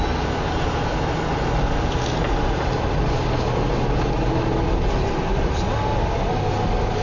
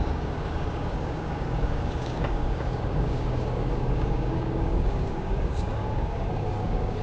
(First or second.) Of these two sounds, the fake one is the second